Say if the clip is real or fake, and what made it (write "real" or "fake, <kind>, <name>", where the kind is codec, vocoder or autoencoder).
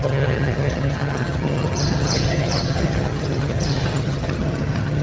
fake, vocoder, HiFi-GAN